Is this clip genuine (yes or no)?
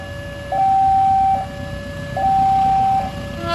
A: yes